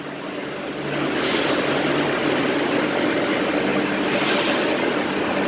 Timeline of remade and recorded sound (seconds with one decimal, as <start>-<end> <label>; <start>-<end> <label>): 0.0-5.5 recorded